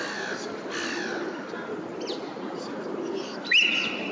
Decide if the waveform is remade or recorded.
recorded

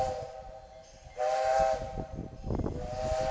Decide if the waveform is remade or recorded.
recorded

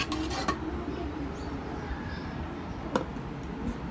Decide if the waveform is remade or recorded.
recorded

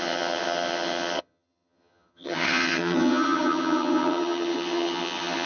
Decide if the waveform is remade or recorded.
remade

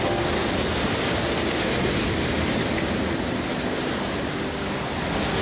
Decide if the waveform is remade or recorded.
recorded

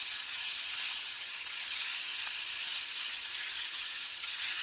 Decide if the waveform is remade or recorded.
remade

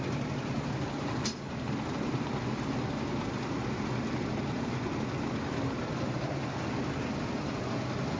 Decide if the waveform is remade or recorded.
recorded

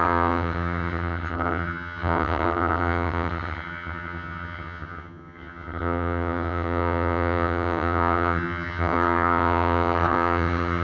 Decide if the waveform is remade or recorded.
remade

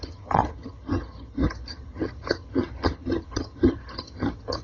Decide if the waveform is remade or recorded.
remade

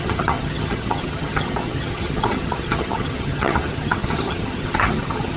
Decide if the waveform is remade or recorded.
remade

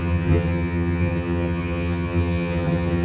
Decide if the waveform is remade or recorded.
remade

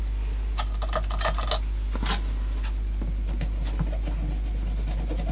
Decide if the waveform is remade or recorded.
recorded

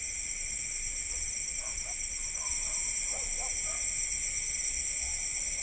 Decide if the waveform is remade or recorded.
recorded